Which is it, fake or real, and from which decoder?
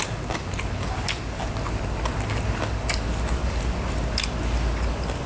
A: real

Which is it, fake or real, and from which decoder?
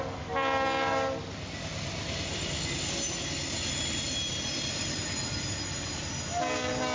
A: real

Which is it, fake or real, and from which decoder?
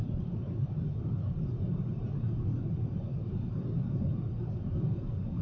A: real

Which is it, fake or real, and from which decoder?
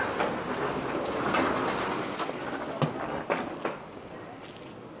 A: real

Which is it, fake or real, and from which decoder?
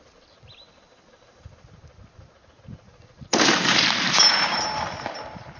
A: real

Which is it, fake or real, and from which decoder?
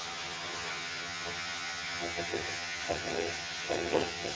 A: fake, vocoder, HiFi-GAN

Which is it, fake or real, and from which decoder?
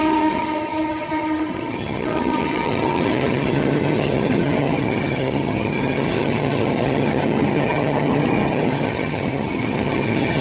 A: fake, vocoder, HiFi-GAN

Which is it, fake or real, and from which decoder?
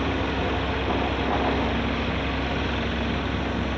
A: real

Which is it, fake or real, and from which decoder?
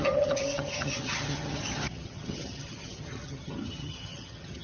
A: fake, vocoder, HiFi-GAN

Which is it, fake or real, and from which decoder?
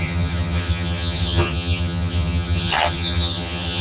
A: fake, vocoder, HiFi-GAN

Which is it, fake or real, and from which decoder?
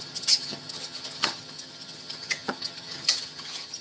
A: fake, vocoder, HiFi-GAN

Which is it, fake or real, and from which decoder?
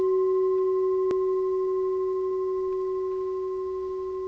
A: real